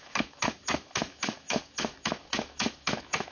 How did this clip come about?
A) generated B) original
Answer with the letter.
A